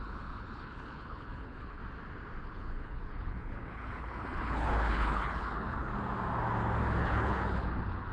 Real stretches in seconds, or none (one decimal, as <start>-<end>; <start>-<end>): 1.8-2.4; 5.9-7.0